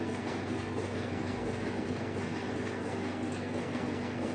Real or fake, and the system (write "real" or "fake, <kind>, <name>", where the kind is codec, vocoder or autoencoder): fake, codec, SNAC